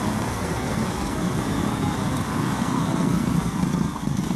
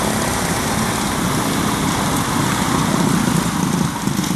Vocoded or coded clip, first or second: first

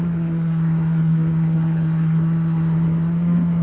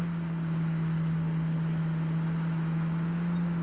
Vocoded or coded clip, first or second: first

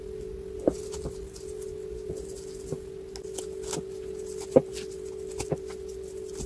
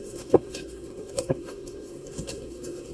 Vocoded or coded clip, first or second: second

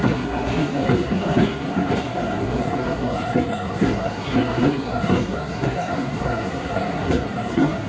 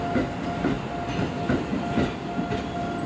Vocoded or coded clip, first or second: first